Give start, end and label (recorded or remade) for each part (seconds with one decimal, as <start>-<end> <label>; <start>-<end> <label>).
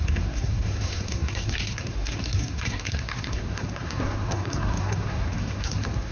0.0-6.1 remade